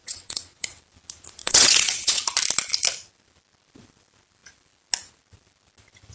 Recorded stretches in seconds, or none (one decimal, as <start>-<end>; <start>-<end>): 0.8-1.4; 2.2-6.1

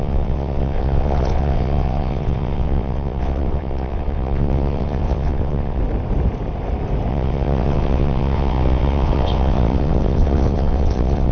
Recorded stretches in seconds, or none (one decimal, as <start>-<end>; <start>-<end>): 5.8-7.1

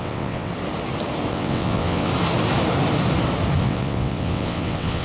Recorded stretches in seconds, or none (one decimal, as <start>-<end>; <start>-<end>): 0.5-1.3; 2.1-3.6

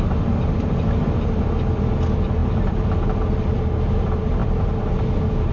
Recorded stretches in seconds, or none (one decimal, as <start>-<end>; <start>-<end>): 0.0-5.5

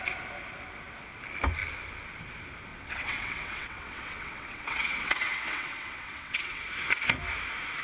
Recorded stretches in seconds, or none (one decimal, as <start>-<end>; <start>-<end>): 0.0-2.7; 6.7-7.8

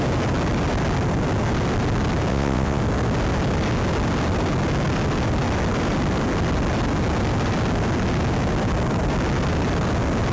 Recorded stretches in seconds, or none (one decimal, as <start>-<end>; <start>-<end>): 0.0-2.3; 2.8-10.3

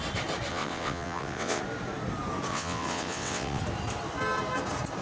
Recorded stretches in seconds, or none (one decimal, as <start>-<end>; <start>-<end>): 0.0-0.5; 1.6-2.5; 3.6-5.0